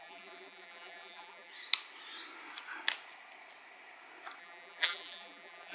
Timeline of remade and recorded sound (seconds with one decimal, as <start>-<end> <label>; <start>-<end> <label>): 0.0-1.5 remade; 1.5-4.4 recorded; 4.4-5.7 remade